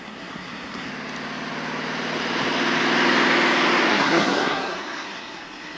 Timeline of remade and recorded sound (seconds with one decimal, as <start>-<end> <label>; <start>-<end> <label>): 0.0-0.9 remade; 0.9-3.9 recorded; 3.9-5.8 remade